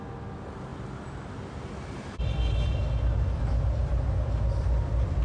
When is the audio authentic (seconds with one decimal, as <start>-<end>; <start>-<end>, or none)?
0.0-0.7; 3.4-3.8